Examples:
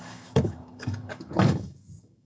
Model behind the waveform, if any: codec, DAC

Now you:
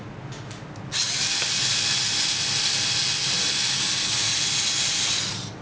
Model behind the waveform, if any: none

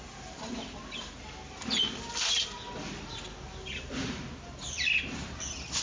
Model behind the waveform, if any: none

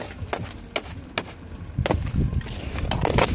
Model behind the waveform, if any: none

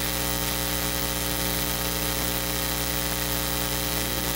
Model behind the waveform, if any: none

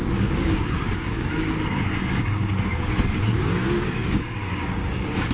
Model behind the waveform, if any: codec, DAC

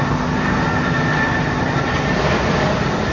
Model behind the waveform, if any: none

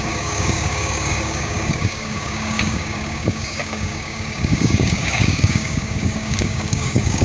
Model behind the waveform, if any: codec, DAC